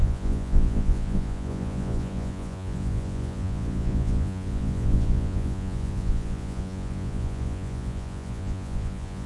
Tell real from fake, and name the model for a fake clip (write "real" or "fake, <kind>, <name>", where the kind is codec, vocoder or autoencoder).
fake, vocoder, Vocos